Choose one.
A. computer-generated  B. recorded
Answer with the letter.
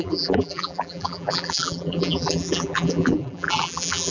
A